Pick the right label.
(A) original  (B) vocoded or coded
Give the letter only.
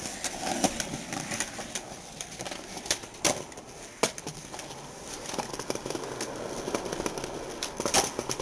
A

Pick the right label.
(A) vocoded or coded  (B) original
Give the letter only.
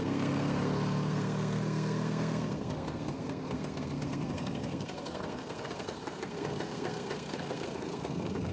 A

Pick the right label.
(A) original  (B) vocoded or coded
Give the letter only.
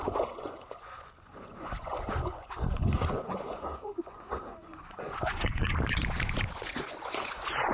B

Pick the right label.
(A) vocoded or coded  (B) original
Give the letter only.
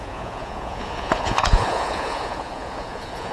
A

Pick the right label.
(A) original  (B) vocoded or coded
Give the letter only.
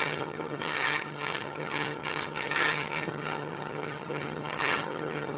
B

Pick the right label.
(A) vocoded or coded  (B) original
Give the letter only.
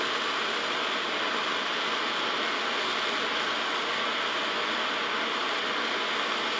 B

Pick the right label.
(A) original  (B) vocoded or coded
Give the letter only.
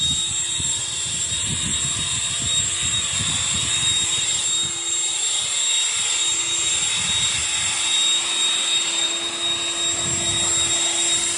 A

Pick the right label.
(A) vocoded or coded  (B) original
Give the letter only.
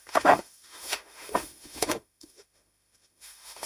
A